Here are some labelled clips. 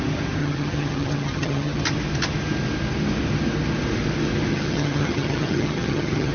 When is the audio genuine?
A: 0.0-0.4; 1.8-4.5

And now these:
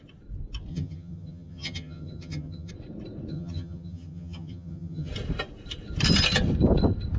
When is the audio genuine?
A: 0.0-0.7; 2.7-3.3; 5.1-7.2

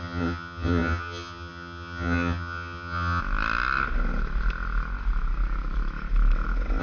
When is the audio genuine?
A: 3.2-6.8

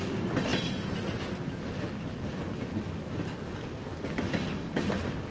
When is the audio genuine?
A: 0.0-5.3

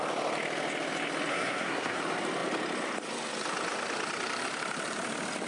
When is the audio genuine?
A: 0.0-1.3; 2.0-5.5

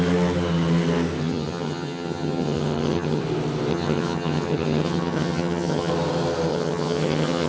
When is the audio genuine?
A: 0.0-1.2; 3.2-3.7; 5.9-6.5

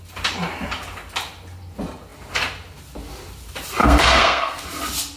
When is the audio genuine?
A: 0.0-3.8; 4.6-5.2

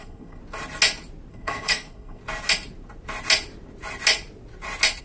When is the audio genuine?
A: 0.4-1.3; 2.2-5.0